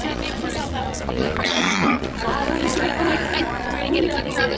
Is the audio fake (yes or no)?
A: yes